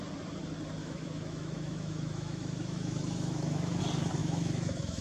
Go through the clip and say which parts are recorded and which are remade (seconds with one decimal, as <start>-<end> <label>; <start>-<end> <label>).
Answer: 0.0-0.8 recorded; 0.8-3.8 remade; 3.8-4.2 recorded; 4.2-5.0 remade